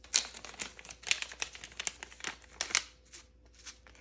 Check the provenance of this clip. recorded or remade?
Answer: recorded